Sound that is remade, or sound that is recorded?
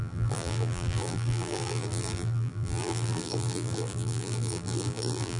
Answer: remade